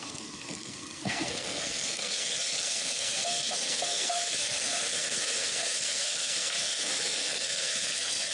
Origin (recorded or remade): remade